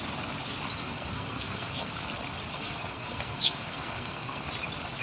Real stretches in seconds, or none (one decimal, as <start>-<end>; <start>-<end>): 0.0-0.7; 1.9-2.5; 4.5-5.0